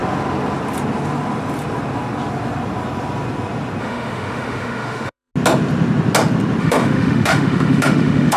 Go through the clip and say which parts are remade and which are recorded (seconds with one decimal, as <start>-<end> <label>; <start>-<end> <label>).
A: 0.0-3.8 recorded; 3.8-5.3 remade; 5.3-6.6 recorded; 6.6-8.4 remade